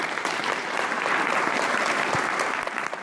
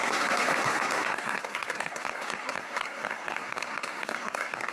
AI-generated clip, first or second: second